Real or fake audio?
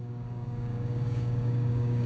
fake